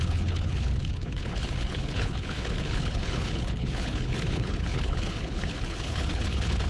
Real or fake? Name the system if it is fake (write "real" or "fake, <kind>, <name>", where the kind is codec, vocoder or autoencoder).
fake, codec, HILCodec